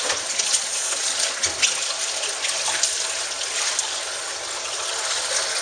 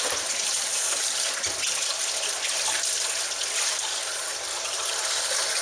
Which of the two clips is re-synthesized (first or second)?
second